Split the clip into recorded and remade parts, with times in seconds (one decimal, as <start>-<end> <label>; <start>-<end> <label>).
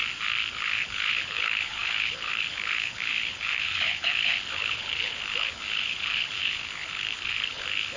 0.0-0.5 recorded; 0.5-8.0 remade